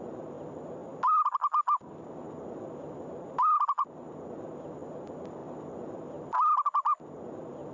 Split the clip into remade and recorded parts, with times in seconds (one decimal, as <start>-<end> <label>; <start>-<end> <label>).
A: 0.0-7.7 recorded